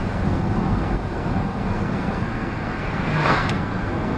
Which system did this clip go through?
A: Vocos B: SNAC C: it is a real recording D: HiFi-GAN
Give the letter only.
B